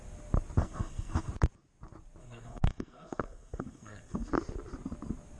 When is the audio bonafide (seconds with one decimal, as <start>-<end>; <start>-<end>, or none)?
0.0-0.6; 1.3-2.2; 4.3-5.4